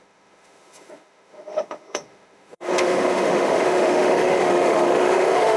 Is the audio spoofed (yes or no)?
yes